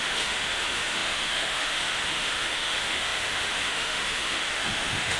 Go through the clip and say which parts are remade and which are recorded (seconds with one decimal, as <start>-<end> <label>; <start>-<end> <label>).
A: 0.0-5.2 remade